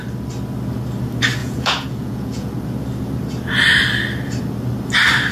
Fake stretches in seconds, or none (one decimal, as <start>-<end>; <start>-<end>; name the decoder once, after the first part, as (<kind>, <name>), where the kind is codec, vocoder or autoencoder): 1.4-2.5 (vocoder, Vocos)